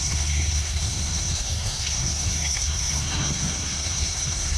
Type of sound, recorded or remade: remade